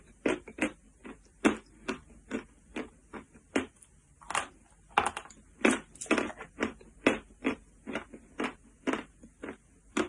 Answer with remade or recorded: recorded